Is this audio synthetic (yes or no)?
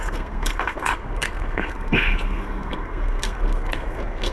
yes